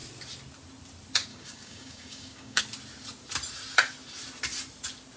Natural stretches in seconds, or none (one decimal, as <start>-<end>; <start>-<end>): 0.0-1.3; 2.6-5.2